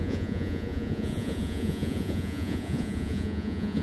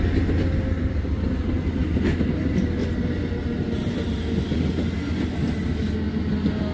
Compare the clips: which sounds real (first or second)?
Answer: second